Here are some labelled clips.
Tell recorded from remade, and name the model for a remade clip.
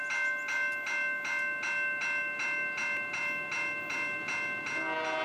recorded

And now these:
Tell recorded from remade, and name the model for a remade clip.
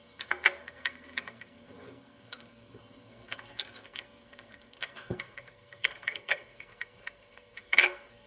remade, codec, SNAC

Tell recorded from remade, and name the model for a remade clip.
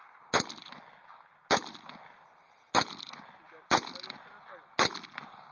recorded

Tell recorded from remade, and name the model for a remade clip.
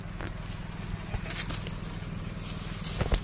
recorded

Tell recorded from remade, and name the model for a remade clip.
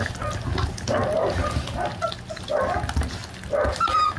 recorded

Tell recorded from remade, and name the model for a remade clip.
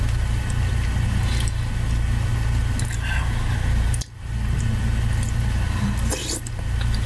recorded